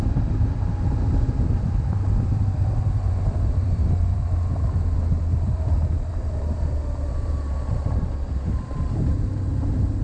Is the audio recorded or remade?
remade